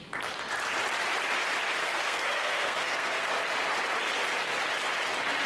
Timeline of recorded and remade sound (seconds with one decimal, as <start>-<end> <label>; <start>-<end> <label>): 0.0-1.8 recorded; 1.8-3.3 remade; 3.3-5.5 recorded